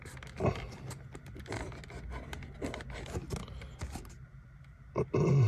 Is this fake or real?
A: real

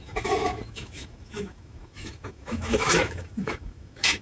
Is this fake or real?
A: fake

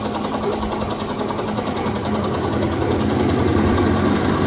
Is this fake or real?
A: real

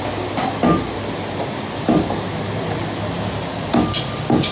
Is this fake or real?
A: real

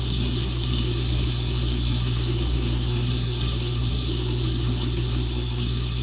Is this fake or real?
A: fake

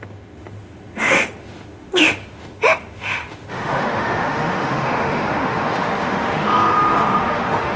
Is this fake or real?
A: fake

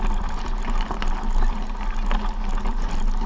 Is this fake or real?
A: real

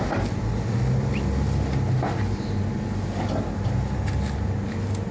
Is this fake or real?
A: real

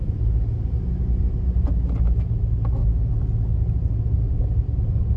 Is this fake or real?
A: real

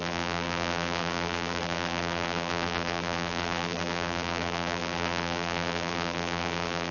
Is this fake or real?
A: fake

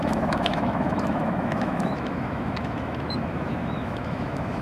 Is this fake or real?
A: fake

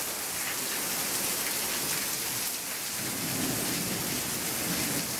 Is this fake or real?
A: real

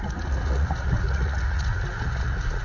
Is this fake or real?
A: fake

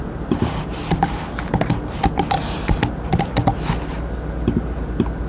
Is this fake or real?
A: real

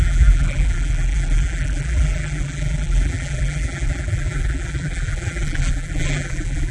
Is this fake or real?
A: fake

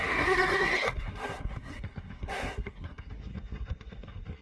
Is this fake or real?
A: fake